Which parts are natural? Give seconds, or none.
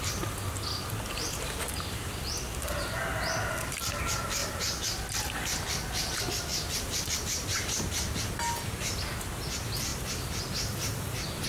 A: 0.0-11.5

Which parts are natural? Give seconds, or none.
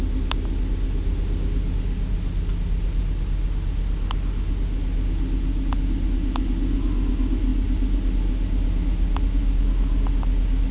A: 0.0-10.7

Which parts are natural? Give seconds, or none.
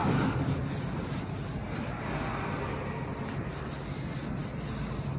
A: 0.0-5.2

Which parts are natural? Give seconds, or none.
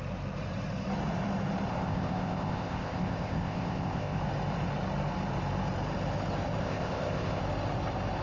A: 0.0-1.7; 4.2-6.6; 7.4-8.2